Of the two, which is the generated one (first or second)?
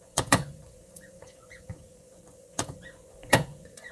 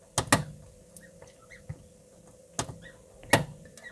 first